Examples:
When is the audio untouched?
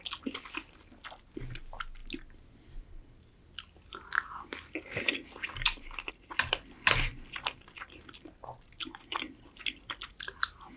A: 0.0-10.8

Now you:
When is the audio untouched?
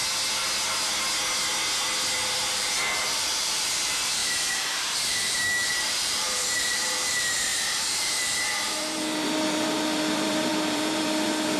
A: 0.0-2.5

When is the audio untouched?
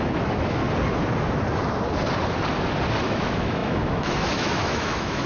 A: 0.6-3.0